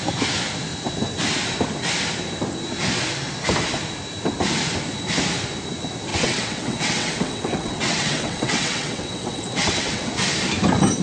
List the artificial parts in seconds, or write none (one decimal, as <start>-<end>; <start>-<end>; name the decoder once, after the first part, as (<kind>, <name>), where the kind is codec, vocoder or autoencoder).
6.1-10.1 (vocoder, WaveNeXt)